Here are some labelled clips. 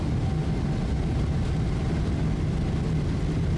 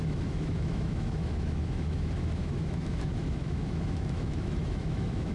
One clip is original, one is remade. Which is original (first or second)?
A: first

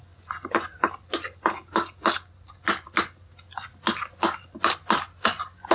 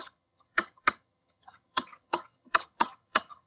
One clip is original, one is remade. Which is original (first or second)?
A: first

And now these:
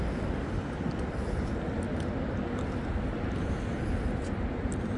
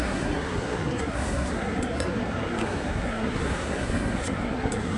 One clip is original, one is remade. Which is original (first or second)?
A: first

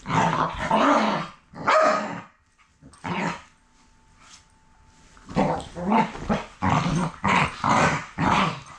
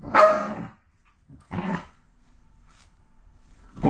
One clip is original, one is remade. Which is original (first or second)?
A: first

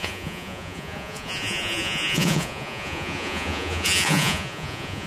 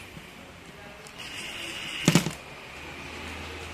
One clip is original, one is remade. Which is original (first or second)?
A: second